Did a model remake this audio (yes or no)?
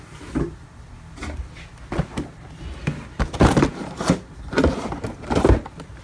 no